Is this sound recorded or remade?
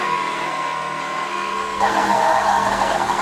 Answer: remade